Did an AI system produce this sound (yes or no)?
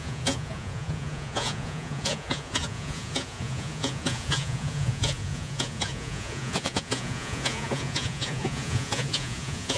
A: yes